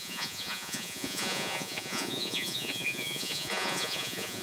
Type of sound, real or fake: fake